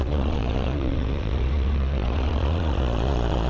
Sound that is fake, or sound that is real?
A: fake